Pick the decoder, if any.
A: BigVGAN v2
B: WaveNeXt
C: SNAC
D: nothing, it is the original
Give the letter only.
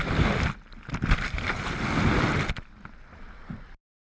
D